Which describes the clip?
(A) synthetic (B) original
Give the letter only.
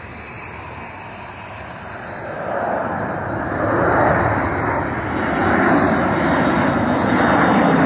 B